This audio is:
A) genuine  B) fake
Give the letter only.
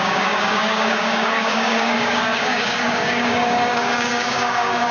B